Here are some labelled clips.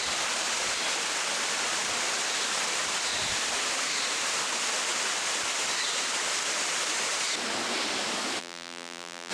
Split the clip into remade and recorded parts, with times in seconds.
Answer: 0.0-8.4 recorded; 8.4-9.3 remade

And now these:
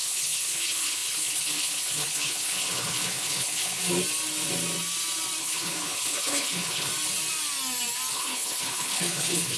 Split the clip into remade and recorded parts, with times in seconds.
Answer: 0.0-3.8 remade; 3.8-5.4 recorded; 5.4-6.9 remade; 6.9-8.1 recorded; 8.1-9.6 remade

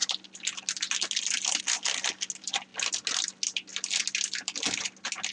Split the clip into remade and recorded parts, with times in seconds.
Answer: 0.0-5.3 recorded

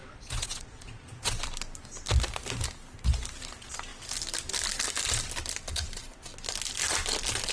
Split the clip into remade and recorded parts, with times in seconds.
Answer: 0.0-1.4 remade; 1.4-7.5 recorded

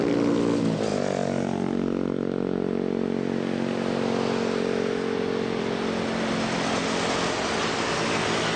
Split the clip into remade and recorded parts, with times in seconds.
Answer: 0.0-8.6 recorded